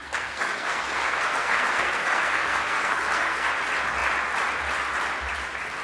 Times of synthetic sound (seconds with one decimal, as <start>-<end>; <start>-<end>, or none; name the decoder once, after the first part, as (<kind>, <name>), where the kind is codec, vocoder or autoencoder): 0.0-3.5 (codec, SNAC)